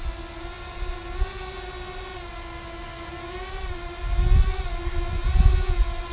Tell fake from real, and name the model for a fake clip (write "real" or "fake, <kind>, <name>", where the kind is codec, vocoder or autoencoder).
real